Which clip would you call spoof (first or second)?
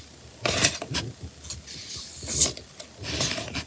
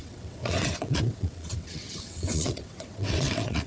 second